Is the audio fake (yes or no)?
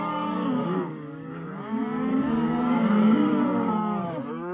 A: yes